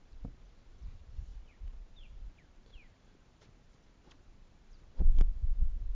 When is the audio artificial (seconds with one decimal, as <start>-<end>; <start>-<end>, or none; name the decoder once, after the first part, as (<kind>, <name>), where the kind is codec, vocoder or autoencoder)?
0.0-5.9 (vocoder, BigVGAN v2)